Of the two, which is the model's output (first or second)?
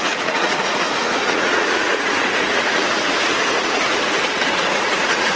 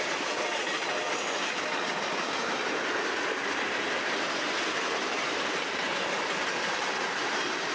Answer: first